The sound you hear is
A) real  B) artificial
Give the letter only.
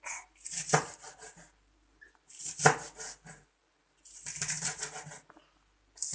A